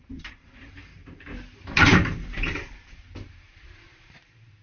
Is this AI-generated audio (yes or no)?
yes